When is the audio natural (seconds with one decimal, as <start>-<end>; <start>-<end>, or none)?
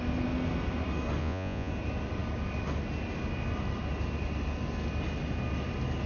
0.0-1.2; 1.7-6.1